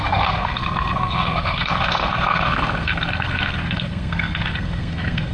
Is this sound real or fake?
fake